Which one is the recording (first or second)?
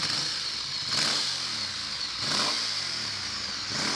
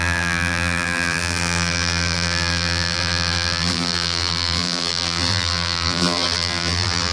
first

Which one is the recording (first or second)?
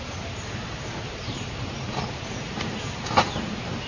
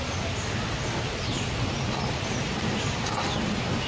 second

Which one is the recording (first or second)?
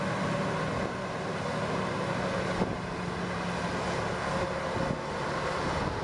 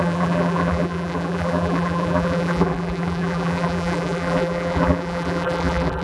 first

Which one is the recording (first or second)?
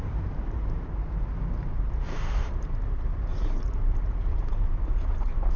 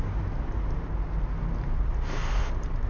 second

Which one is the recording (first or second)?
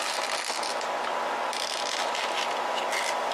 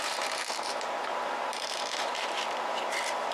first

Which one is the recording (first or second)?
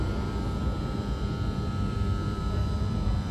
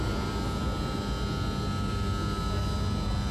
second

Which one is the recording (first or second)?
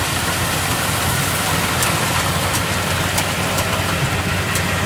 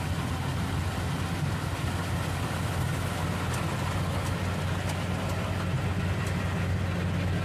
second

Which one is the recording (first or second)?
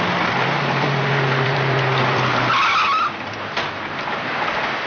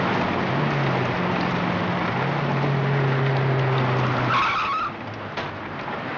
second